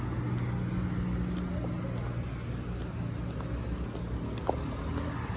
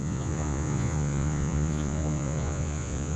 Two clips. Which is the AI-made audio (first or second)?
second